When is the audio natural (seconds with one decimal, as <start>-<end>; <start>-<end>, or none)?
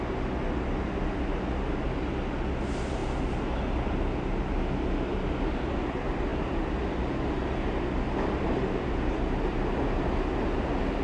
0.0-11.0